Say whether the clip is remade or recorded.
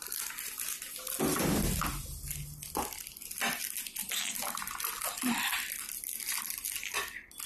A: recorded